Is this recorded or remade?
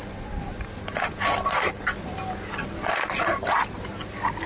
recorded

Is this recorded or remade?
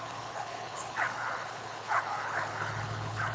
remade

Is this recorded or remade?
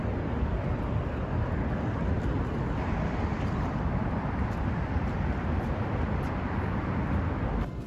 remade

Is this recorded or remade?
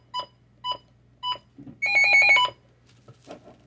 recorded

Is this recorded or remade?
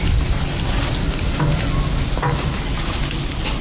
recorded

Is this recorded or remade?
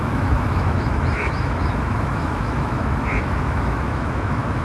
remade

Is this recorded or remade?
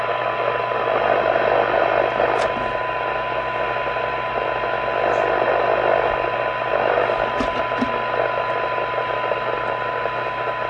recorded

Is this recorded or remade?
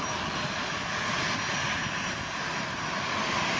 recorded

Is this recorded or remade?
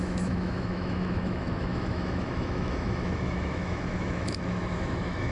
remade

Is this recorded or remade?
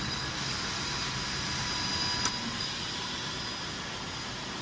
recorded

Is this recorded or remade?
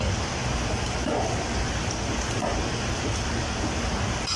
recorded